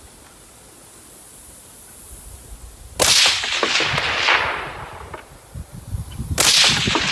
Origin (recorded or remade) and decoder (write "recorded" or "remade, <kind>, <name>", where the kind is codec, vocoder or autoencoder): recorded